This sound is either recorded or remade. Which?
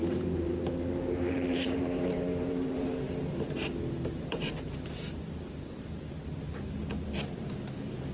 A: remade